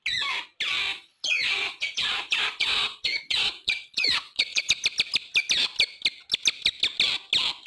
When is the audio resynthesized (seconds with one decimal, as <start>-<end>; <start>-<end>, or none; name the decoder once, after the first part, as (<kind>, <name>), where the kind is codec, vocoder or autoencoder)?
0.9-4.7 (vocoder, Vocos)